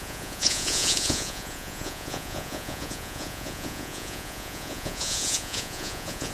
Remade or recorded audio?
remade